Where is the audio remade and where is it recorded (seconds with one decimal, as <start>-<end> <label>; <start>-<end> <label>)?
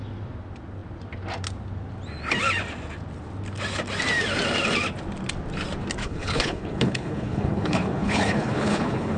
0.0-6.0 recorded; 6.0-9.2 remade